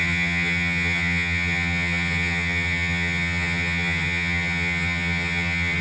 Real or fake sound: fake